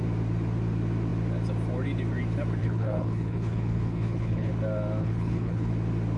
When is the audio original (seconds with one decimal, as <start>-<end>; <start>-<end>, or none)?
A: 0.0-2.6; 4.5-5.0; 5.7-6.2

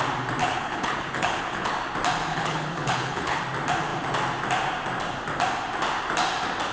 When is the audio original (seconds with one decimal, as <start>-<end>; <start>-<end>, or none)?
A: 0.0-0.4; 1.7-2.3; 3.4-6.7

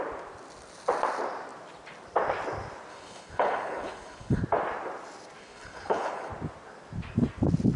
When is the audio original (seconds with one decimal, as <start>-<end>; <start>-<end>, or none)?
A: 0.0-2.9; 4.4-5.4; 6.3-7.8

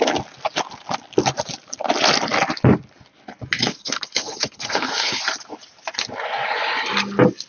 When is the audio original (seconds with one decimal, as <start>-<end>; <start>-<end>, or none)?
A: 0.0-3.7; 5.2-7.5

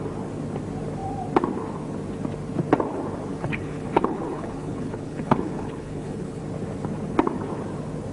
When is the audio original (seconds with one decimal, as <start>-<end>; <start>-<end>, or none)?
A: 0.0-3.3; 6.4-8.1